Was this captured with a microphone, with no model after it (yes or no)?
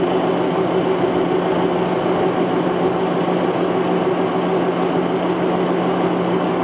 yes